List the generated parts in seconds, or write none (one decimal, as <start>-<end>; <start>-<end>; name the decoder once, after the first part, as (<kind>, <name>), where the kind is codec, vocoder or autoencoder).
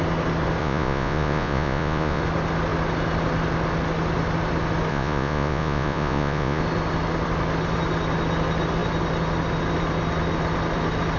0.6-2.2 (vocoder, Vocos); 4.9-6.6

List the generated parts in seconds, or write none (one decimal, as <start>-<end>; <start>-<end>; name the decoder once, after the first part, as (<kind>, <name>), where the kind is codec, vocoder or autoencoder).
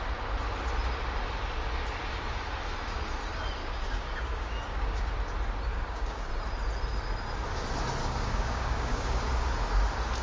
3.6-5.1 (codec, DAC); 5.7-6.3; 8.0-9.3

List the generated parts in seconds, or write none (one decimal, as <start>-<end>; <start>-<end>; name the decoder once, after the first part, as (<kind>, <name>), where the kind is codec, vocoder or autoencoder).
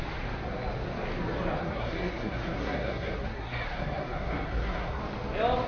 1.6-5.0 (codec, SNAC)